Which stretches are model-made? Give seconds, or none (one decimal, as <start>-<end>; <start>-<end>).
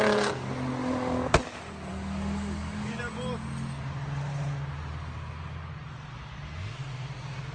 0.8-1.4; 1.9-3.0